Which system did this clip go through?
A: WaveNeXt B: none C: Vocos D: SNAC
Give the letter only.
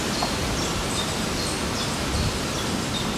B